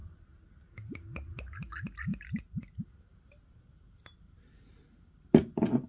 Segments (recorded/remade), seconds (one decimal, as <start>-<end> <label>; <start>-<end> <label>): 0.0-5.9 recorded